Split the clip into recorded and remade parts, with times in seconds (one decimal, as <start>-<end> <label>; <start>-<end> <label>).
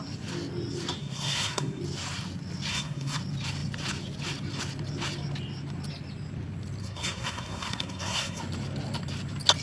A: 0.0-1.0 recorded; 1.0-1.8 remade; 1.8-2.7 recorded; 2.7-3.2 remade; 3.2-6.8 recorded; 6.8-8.4 remade; 8.4-9.6 recorded